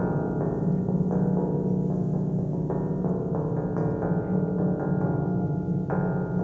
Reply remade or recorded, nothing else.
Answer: recorded